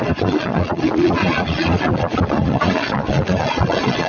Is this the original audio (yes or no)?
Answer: no